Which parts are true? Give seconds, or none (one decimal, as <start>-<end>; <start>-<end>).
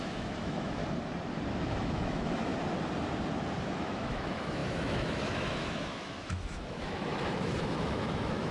0.8-1.5; 2.5-3.6